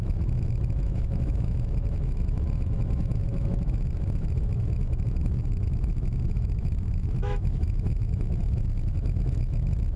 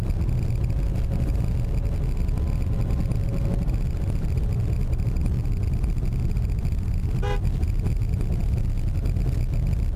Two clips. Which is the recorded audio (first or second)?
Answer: second